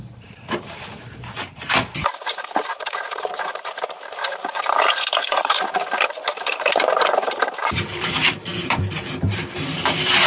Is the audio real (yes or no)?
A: no